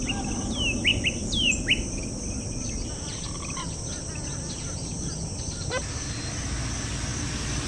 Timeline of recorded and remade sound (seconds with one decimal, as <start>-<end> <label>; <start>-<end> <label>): 0.0-0.9 recorded; 0.9-1.5 remade; 1.5-7.7 recorded